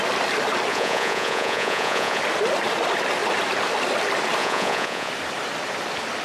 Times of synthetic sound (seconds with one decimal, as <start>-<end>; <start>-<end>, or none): 0.7-2.2; 4.4-5.1

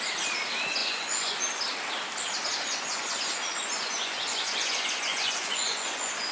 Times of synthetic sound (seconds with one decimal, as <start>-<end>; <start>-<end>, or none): 0.8-1.4; 2.5-6.3

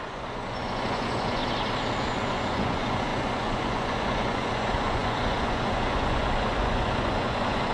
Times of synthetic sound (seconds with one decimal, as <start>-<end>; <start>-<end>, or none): 0.0-1.4; 2.0-7.7

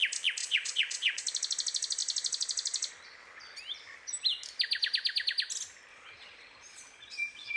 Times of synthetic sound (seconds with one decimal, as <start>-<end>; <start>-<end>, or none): 0.4-1.2; 5.9-7.6

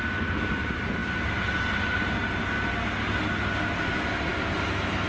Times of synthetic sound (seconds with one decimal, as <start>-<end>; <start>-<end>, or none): none

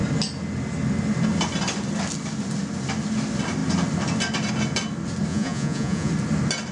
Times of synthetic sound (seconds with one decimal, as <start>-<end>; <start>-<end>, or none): 5.3-6.1

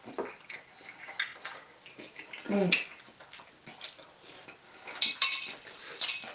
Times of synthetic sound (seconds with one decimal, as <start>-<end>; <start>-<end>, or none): none